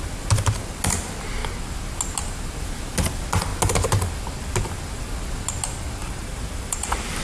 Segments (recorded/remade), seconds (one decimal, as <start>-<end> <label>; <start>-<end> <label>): 0.0-6.0 recorded; 6.0-7.2 remade